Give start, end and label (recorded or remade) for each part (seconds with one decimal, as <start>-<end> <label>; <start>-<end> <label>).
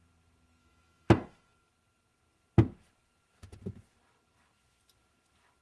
0.0-0.6 recorded; 0.6-1.7 remade; 1.7-5.6 recorded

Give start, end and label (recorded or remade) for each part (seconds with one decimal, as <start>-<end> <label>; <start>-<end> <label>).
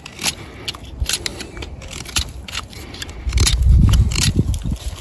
0.0-1.3 recorded; 1.3-4.3 remade; 4.3-5.0 recorded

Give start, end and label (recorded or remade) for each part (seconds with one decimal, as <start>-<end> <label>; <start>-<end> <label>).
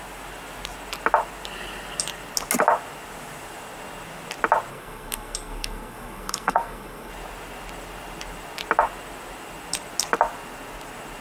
0.0-4.7 recorded; 4.7-7.1 remade; 7.1-11.2 recorded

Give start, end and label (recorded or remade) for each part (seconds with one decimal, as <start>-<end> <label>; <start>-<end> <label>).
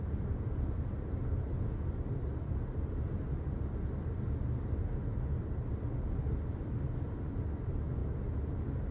0.0-8.9 recorded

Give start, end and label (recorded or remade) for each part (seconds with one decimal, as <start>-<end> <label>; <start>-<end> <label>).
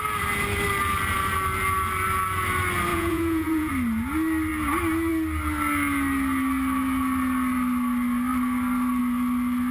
0.0-2.9 recorded; 2.9-3.7 remade; 3.7-9.7 recorded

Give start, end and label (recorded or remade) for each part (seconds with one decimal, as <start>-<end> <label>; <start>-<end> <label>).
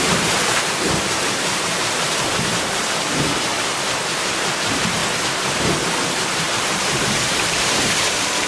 0.0-3.5 remade; 3.5-4.2 recorded; 4.2-5.0 remade; 5.0-6.4 recorded; 6.4-8.5 remade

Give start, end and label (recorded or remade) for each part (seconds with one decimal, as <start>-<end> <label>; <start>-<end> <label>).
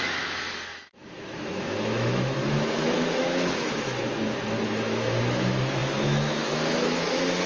0.0-7.5 remade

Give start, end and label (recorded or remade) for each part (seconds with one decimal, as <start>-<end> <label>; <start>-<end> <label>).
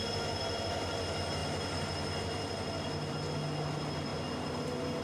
0.0-5.0 recorded